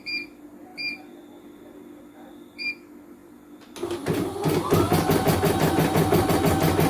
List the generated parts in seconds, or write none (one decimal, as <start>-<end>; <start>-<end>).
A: none